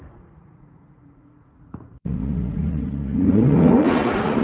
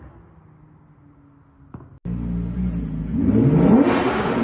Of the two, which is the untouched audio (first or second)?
second